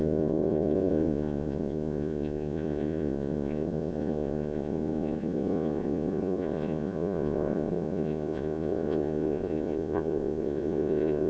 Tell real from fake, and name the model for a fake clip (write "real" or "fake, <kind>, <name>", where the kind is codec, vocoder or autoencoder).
fake, vocoder, Vocos